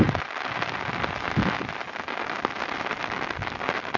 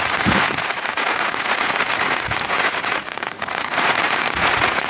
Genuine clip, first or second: first